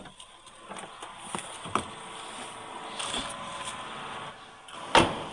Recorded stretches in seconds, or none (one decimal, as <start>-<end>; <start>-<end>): 0.0-5.3